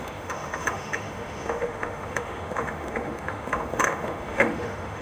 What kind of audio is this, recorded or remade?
remade